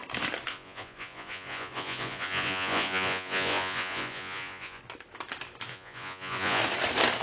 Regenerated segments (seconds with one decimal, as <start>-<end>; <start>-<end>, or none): 0.5-4.8; 5.7-6.6